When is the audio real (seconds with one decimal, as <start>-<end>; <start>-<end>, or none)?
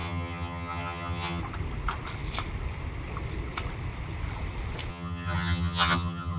1.4-4.9